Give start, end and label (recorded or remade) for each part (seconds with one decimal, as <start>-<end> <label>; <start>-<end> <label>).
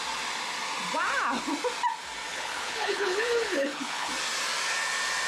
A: 0.0-2.3 recorded; 2.3-4.1 remade; 4.1-5.3 recorded